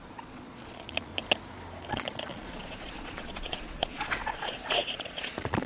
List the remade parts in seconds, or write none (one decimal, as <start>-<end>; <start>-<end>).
0.0-1.1; 1.9-5.7